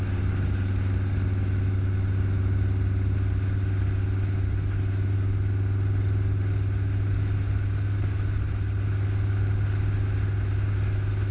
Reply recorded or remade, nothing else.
recorded